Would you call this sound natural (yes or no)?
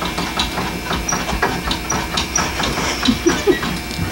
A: yes